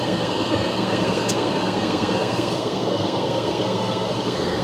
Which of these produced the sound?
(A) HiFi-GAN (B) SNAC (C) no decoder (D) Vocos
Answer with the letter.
B